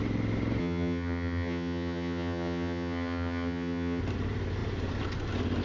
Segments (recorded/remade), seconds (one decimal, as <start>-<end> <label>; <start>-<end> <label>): 0.0-0.6 recorded; 0.6-4.0 remade; 4.0-5.6 recorded